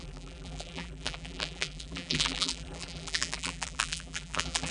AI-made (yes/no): yes